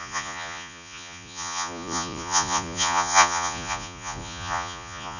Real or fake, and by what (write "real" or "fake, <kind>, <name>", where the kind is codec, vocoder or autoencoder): fake, vocoder, Vocos